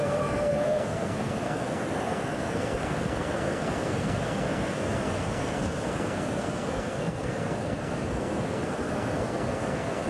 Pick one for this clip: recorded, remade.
remade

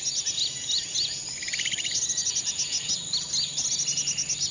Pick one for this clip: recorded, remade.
recorded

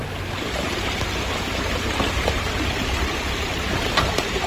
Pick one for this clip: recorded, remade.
recorded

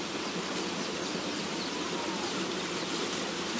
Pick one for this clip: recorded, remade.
recorded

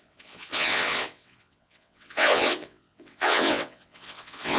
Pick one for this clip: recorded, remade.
remade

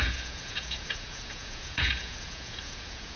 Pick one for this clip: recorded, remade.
remade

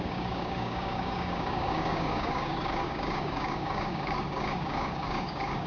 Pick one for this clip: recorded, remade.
remade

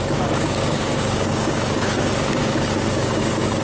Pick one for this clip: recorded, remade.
remade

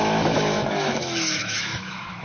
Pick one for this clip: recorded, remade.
remade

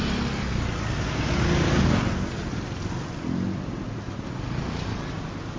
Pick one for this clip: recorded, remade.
recorded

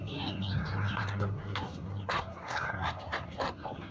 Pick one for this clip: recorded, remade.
remade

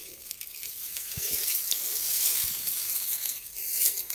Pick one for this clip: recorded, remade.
remade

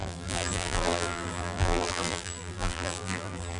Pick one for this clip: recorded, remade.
remade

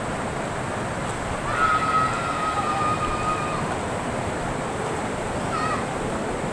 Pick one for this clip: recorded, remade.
recorded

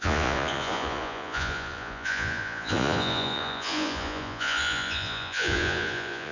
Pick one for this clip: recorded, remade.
remade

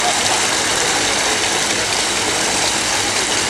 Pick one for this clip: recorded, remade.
recorded